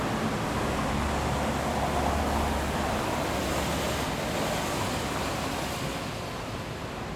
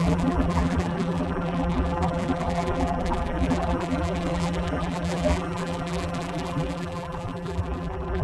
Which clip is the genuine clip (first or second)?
first